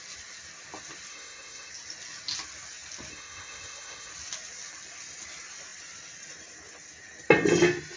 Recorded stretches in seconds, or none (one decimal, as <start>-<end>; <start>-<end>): 0.0-1.1; 1.7-3.1; 4.1-8.0